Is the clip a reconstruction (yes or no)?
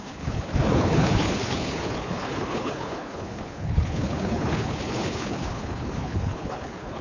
yes